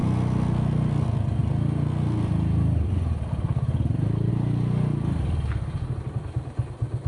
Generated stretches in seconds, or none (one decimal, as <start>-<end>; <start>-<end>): none